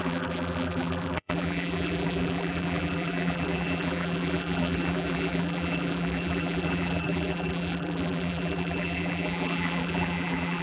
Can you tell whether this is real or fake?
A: fake